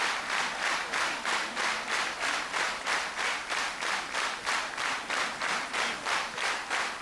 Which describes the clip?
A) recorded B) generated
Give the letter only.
B